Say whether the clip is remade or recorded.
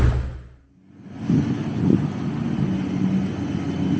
recorded